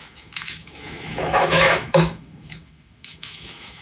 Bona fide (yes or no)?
no